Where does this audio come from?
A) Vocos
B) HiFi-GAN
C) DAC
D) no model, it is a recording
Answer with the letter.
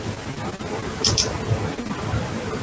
D